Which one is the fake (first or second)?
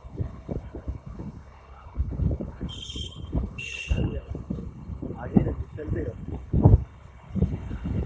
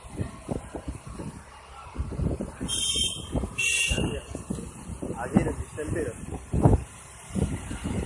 first